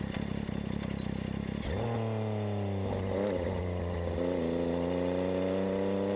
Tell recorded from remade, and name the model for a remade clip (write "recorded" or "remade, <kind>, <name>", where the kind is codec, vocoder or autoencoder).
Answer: recorded